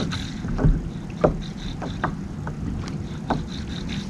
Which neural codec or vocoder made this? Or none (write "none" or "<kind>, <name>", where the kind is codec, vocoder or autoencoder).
none